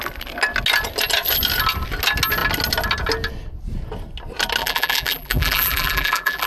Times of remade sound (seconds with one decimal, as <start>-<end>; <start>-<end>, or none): 4.6-6.5